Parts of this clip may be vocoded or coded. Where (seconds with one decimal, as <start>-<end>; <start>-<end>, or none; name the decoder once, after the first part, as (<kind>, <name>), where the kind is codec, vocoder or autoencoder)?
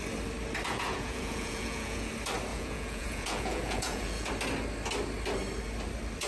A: 0.7-2.1 (vocoder, Vocos); 2.5-4.3